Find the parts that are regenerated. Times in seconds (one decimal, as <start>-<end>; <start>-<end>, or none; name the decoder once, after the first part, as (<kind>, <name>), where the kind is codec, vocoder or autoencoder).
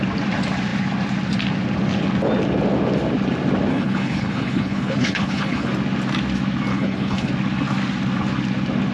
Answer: 3.7-5.7 (codec, HILCodec); 6.7-7.3